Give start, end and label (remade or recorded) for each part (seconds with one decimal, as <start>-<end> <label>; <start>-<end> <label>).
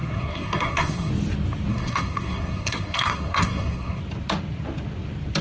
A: 0.0-1.1 remade; 1.1-1.7 recorded; 1.7-4.0 remade; 4.0-5.4 recorded